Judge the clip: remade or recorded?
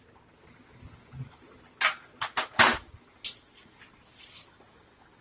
recorded